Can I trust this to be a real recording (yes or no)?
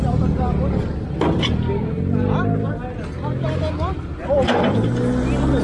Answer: yes